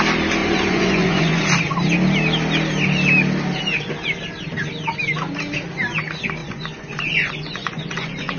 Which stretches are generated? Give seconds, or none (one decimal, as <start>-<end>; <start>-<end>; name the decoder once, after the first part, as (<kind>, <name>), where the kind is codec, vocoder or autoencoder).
0.4-1.4 (vocoder, Vocos); 6.4-8.4